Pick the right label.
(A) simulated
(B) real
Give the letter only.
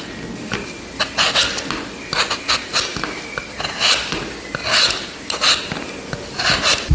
B